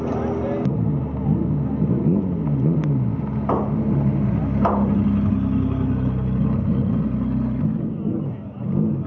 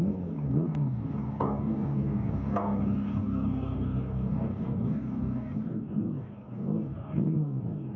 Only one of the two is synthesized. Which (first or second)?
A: second